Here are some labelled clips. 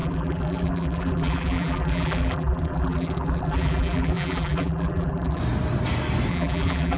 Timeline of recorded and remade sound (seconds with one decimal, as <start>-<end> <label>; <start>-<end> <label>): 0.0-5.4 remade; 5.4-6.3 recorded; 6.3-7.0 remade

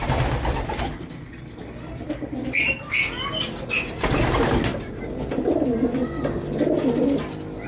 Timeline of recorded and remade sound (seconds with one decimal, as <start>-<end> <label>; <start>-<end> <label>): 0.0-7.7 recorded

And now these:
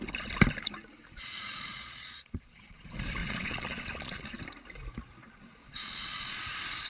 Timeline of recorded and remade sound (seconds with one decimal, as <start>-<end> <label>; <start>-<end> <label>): 0.0-1.2 recorded; 1.2-2.8 remade; 2.8-3.2 recorded; 3.2-4.4 remade; 4.4-5.2 recorded; 5.2-6.4 remade; 6.4-6.9 recorded